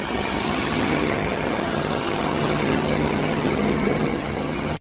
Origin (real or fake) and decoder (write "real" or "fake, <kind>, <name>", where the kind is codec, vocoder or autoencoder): fake, vocoder, HiFi-GAN